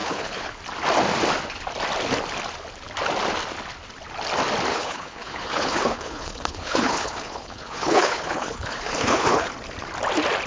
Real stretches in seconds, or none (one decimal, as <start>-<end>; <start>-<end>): 0.6-4.7; 9.5-10.5